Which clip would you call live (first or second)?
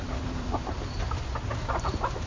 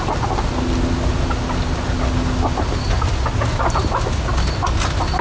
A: second